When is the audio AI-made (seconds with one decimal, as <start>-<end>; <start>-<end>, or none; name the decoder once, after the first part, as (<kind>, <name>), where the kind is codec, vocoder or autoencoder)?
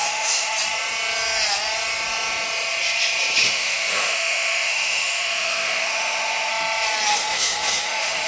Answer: 0.0-0.5 (autoencoder, DAC-VAE); 3.4-6.5; 7.1-8.3